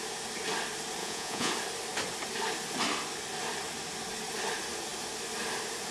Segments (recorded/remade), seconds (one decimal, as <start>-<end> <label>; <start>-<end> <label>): 0.0-1.0 recorded; 1.0-1.5 remade; 1.5-5.9 recorded